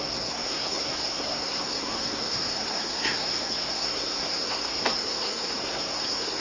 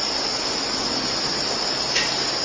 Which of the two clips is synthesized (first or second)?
first